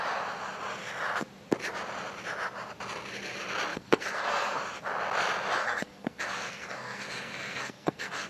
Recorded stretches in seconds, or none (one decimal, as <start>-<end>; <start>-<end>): 0.0-3.7; 4.6-5.6